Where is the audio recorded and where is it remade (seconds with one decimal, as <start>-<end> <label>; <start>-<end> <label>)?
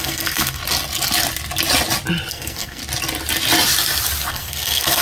0.0-0.6 remade; 0.6-2.3 recorded; 2.3-2.8 remade; 2.8-4.3 recorded; 4.3-5.0 remade